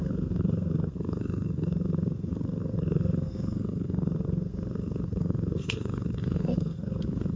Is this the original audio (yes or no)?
no